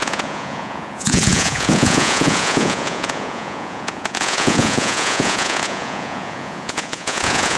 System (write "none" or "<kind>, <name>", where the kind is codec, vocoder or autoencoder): vocoder, Vocos